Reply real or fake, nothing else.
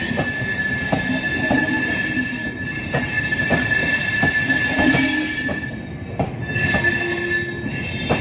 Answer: real